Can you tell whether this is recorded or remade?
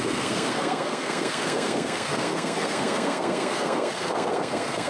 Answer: remade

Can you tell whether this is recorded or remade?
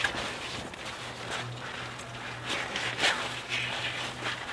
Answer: recorded